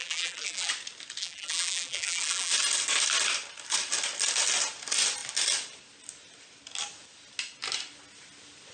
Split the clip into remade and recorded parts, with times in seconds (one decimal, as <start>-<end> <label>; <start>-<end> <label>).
0.0-0.7 remade; 0.7-1.2 recorded; 1.2-2.5 remade; 2.5-8.7 recorded